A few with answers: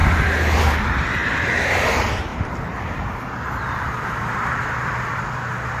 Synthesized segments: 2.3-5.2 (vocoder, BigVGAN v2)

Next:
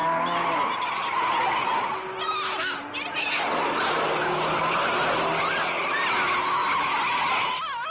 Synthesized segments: 6.6-7.1 (vocoder, BigVGAN v2)